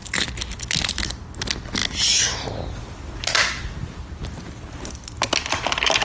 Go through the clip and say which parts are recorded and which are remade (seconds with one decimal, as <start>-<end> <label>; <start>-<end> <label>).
0.0-6.0 recorded